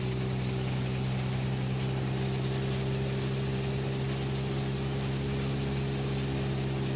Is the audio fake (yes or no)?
no